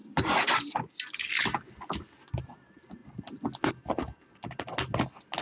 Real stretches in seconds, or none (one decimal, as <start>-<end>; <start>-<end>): 0.0-5.4